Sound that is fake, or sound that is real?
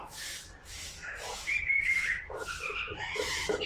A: fake